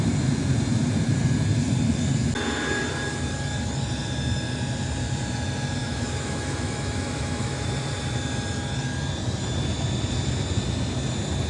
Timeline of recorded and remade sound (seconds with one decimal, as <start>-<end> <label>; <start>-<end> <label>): 0.0-5.8 recorded; 5.8-7.7 remade; 7.7-11.5 recorded